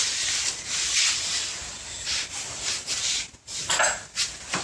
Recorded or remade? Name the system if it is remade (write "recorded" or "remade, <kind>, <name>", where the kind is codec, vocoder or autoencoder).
recorded